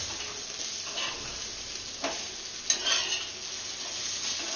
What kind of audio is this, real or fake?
real